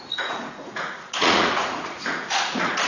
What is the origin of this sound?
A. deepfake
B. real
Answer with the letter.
A